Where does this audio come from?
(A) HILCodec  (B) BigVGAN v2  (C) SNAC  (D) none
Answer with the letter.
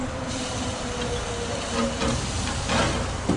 D